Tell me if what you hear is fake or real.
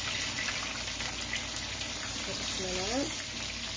real